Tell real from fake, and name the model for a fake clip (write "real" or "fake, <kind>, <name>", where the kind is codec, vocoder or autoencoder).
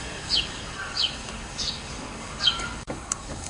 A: fake, codec, DAC